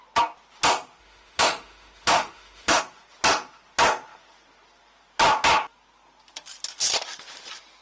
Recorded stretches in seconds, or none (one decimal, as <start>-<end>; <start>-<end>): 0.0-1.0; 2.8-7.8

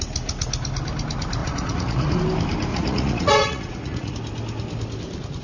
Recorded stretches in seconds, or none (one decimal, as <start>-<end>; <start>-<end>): 0.0-1.4; 2.2-2.7; 4.1-5.4

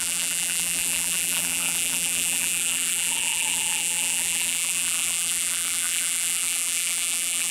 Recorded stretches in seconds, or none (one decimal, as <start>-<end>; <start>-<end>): none

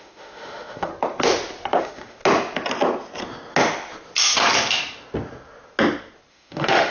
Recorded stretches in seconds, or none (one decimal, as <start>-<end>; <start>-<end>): 0.9-1.8; 2.2-6.3

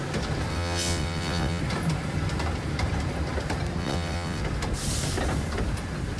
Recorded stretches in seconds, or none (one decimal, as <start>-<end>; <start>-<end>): 0.0-0.5; 1.6-3.8; 4.4-6.2